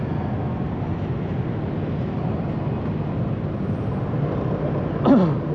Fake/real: real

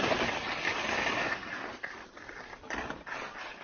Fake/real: real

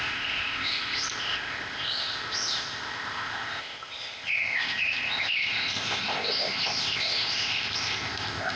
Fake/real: fake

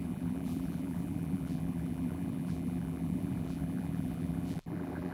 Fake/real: fake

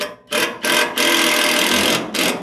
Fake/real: real